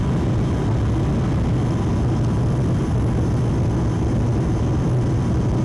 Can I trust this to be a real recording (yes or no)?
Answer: yes